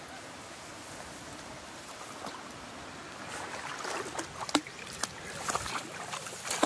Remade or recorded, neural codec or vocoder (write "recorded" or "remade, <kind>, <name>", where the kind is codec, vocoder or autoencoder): recorded